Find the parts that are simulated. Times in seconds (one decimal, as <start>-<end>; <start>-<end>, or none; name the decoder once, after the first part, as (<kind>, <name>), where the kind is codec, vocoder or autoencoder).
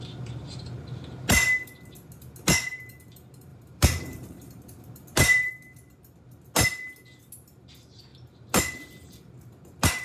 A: 3.5-5.5 (vocoder, BigVGAN v2)